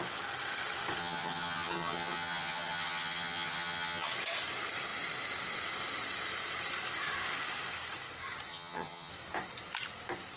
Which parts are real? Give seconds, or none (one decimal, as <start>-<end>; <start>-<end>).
0.0-1.0; 4.1-8.5; 9.1-10.4